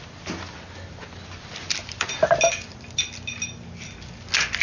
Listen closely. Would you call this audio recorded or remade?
recorded